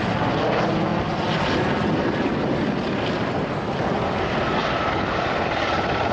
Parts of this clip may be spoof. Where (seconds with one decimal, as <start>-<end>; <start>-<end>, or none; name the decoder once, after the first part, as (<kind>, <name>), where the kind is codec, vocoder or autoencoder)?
4.6-5.4 (vocoder, BigVGAN v2)